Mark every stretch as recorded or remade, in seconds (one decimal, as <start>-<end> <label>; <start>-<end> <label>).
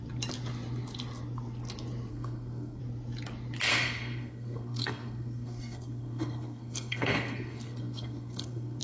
0.0-2.1 recorded; 2.1-2.8 remade; 2.8-3.7 recorded; 3.7-8.8 remade